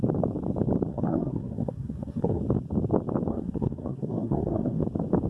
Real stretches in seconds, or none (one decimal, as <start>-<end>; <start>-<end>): 0.0-0.9; 2.4-3.3; 4.8-5.3